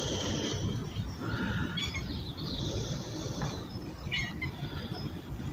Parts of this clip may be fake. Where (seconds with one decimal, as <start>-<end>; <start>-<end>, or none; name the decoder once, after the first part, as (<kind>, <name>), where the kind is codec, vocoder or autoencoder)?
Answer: 0.0-5.5 (vocoder, BigVGAN v2)